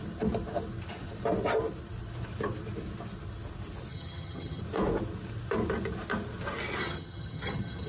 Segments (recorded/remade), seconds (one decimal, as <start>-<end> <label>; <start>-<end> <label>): 0.0-3.9 recorded; 3.9-4.6 remade; 4.6-6.8 recorded; 6.8-7.9 remade